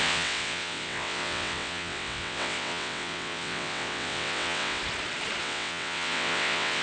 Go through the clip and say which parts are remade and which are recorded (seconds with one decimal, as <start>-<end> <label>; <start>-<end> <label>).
0.0-4.8 remade; 4.8-5.4 recorded; 5.4-6.8 remade